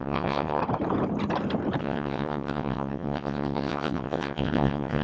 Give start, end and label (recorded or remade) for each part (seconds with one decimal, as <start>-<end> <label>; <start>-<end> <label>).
0.0-0.6 remade; 0.6-1.8 recorded; 1.8-5.0 remade